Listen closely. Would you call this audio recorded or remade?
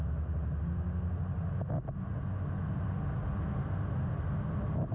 recorded